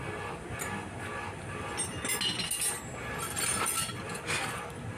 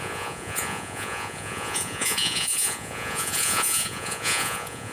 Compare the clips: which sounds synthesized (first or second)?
second